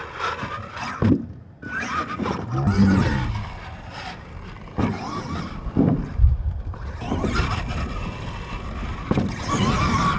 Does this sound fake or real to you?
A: real